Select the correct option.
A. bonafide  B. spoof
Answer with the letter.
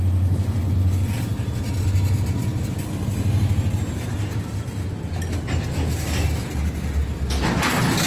A